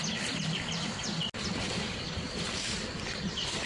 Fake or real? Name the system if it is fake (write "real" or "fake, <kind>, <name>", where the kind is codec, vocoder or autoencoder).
real